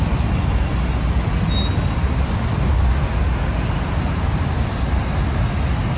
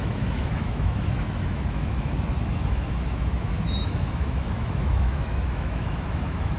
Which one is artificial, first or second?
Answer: second